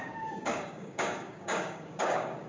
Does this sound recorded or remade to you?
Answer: remade